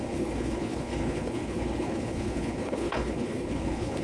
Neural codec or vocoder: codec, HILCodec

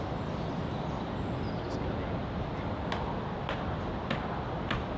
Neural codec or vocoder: none